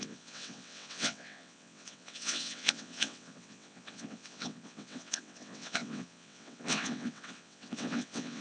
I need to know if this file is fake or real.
fake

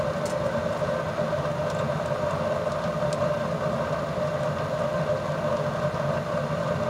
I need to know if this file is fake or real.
real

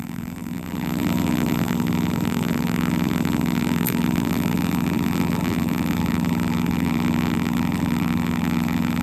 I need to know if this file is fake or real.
fake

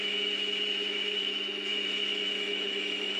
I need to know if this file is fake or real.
fake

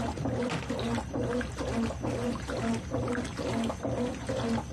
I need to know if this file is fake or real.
real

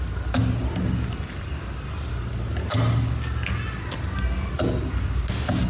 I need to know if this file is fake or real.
real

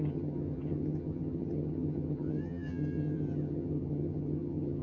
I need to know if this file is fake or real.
fake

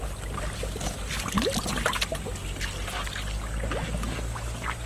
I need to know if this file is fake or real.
real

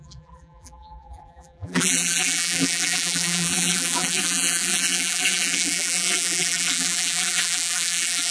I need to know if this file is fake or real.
fake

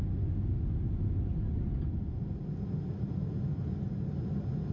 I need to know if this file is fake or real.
real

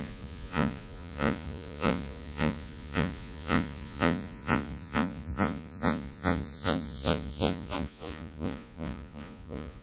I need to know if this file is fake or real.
fake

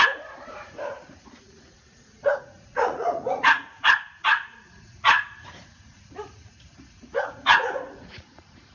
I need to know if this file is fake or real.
fake